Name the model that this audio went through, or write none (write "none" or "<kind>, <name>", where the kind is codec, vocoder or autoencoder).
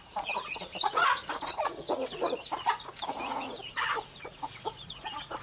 vocoder, Vocos